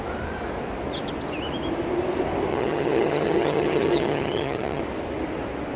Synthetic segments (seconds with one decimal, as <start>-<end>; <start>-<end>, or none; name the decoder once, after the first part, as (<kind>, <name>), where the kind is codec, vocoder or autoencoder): 2.5-4.8 (vocoder, HiFi-GAN)